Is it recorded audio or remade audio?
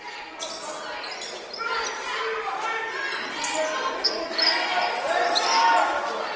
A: recorded